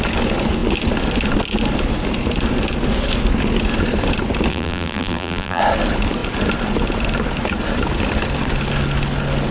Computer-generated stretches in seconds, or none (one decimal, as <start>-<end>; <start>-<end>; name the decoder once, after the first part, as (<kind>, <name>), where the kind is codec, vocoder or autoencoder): 4.5-5.6 (vocoder, BigVGAN v2)

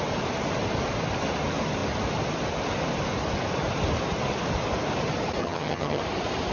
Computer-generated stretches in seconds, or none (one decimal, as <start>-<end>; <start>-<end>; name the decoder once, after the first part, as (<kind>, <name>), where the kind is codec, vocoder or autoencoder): 5.4-6.0 (vocoder, HiFi-GAN)

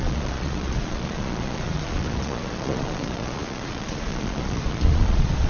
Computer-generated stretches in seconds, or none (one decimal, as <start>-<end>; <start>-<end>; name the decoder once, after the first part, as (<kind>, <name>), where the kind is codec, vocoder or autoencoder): 0.0-5.5 (vocoder, Vocos)

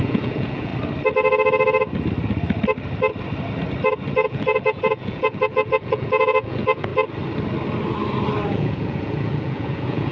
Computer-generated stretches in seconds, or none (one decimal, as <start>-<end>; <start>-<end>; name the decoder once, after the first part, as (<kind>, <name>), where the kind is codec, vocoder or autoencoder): 0.0-0.7 (vocoder, Vocos); 4.1-6.9; 8.5-10.1

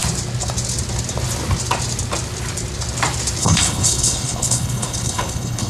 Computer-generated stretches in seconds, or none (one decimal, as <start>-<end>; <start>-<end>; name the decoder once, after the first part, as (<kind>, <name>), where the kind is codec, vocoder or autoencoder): 3.4-5.7 (codec, HILCodec)

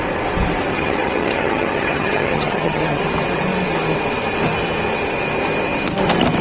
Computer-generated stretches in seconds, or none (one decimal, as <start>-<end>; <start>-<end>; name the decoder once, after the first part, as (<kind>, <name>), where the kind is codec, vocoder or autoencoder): 0.7-3.0 (vocoder, HiFi-GAN)

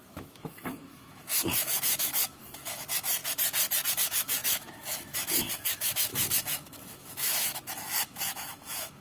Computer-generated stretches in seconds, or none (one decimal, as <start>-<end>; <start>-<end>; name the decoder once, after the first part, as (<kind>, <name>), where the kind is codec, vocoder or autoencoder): 0.0-3.2 (autoencoder, DAC-VAE); 3.9-9.0

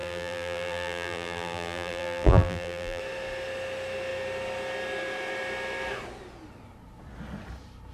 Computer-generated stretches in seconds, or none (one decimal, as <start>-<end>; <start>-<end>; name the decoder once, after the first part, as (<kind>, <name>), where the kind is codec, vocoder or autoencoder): 0.0-3.0 (vocoder, BigVGAN v2)